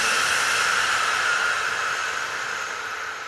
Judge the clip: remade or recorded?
recorded